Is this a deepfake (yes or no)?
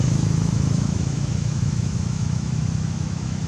yes